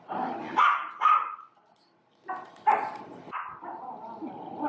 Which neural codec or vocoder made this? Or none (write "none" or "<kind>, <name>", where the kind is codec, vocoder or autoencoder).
none